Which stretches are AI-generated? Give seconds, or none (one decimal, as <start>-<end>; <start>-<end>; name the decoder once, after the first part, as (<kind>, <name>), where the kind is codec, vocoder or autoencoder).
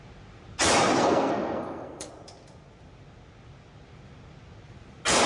1.0-2.1 (codec, SNAC)